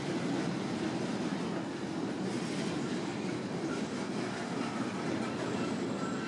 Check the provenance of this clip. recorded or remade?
recorded